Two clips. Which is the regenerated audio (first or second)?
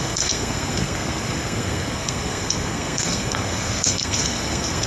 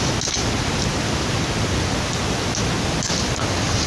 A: first